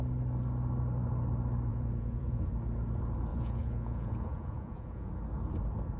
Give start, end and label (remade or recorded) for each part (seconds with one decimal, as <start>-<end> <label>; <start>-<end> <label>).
0.0-1.7 recorded; 1.7-2.5 remade; 2.5-3.3 recorded; 3.3-5.1 remade; 5.1-6.0 recorded